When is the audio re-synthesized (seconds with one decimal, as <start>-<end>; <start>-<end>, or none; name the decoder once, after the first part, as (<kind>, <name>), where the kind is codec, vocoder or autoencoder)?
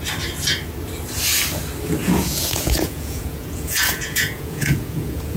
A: 2.0-5.4 (vocoder, Vocos)